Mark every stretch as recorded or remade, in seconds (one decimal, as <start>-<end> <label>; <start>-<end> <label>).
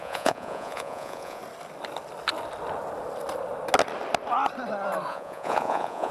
0.0-1.4 remade; 1.4-5.1 recorded; 5.1-6.1 remade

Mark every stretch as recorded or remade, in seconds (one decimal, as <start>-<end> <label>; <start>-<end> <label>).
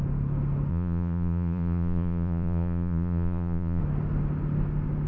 0.0-0.7 recorded; 0.7-3.8 remade; 3.8-5.1 recorded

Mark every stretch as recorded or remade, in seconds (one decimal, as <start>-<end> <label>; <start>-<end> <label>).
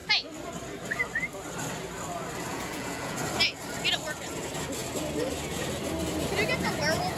0.0-2.5 recorded; 2.5-3.2 remade; 3.2-7.2 recorded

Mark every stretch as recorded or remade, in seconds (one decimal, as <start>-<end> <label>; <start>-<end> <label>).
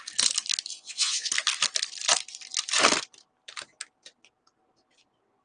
0.0-0.7 recorded; 0.7-1.3 remade; 1.3-5.4 recorded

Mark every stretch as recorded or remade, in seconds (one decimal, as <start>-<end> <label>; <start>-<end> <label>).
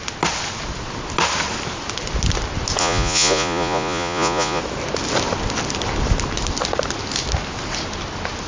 0.0-2.8 recorded; 2.8-4.6 remade; 4.6-8.5 recorded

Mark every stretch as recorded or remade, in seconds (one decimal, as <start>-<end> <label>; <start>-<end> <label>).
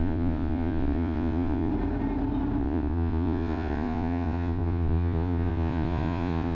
0.0-1.7 remade; 1.7-2.6 recorded; 2.6-6.5 remade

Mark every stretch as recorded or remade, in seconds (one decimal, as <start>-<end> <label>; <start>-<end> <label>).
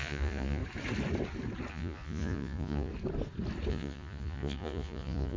0.0-0.6 remade; 0.6-1.7 recorded; 1.7-2.9 remade; 2.9-3.7 recorded; 3.7-5.4 remade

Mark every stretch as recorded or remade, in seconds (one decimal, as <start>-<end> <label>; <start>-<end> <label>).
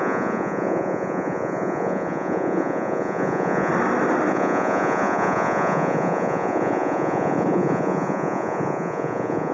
0.0-3.7 remade; 3.7-4.3 recorded; 4.3-9.5 remade